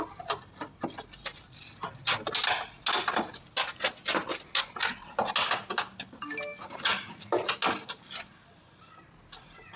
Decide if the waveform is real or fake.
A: real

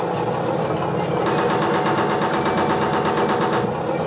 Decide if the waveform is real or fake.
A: real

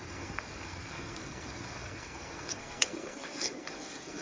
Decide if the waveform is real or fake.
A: fake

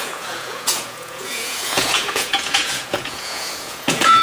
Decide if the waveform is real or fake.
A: fake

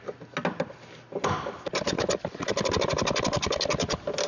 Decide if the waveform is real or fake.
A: real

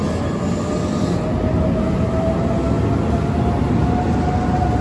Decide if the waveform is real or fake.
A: real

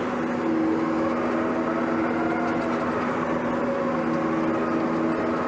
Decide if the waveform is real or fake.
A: real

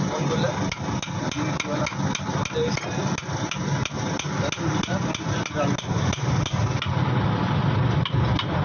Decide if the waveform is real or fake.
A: real